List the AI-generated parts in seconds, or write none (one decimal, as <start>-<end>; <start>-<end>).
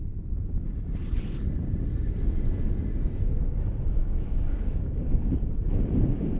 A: 4.0-5.6